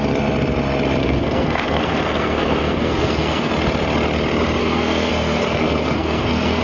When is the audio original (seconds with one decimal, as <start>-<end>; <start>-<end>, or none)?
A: 0.0-1.0; 3.5-4.6